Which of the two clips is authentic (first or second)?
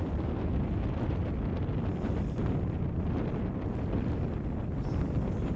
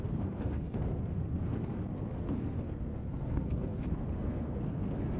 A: first